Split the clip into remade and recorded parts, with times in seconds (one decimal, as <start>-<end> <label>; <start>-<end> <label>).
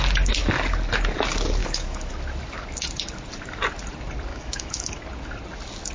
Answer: 0.0-1.6 recorded; 1.6-2.1 remade; 2.1-4.3 recorded; 4.3-4.9 remade; 4.9-5.9 recorded